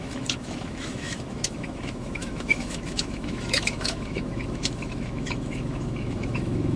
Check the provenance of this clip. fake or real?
fake